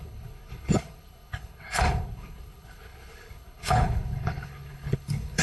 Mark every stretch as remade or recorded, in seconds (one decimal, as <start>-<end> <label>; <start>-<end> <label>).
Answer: 0.0-5.4 remade